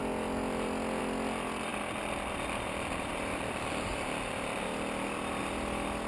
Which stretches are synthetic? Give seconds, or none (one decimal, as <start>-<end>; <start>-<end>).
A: 1.7-5.4